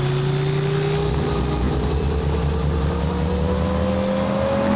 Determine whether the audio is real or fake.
real